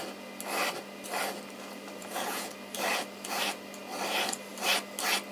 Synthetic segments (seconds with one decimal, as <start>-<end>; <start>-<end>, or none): 2.0-2.5